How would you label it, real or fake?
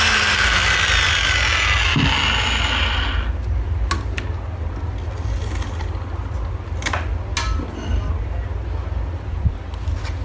real